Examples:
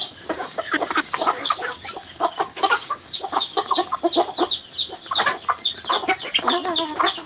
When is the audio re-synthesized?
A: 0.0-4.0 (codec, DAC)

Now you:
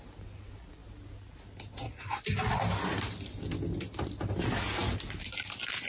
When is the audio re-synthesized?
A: none

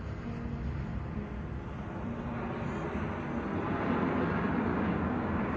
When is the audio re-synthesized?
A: 4.7-5.6 (codec, DAC)